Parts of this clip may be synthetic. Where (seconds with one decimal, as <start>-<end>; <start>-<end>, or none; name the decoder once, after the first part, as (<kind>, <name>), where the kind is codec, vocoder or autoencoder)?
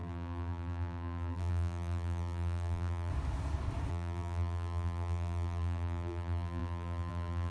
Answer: 0.0-3.1 (vocoder, BigVGAN v2); 3.9-7.5